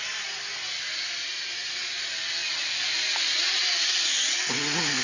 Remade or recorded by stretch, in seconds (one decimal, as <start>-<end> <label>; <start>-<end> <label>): 0.0-5.0 recorded